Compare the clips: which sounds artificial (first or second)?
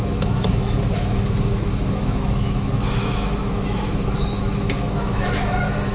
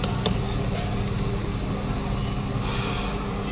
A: first